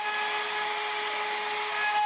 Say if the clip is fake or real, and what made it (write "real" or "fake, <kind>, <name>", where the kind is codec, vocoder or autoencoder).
real